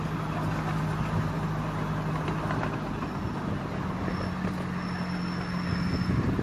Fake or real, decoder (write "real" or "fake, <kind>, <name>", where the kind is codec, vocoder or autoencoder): real